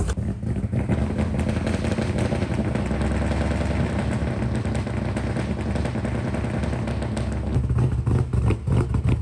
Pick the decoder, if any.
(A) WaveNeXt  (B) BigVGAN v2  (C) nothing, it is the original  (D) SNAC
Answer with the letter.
C